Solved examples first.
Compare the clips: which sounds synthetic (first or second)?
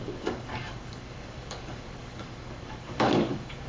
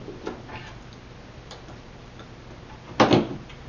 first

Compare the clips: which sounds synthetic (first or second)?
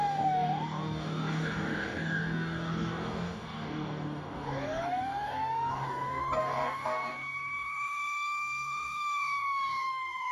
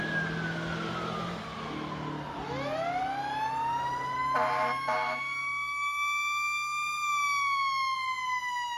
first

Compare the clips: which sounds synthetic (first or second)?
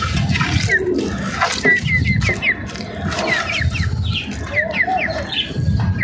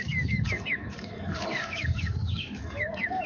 second